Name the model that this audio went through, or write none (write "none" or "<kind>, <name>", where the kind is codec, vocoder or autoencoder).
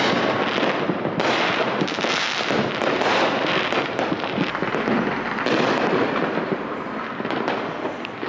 none